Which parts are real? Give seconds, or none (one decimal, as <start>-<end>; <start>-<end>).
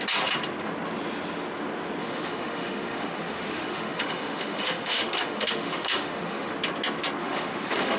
0.0-2.0; 6.5-7.2